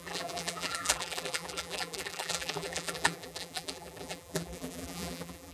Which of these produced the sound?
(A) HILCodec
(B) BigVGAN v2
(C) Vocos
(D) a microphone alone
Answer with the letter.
B